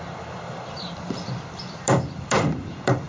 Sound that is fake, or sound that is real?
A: fake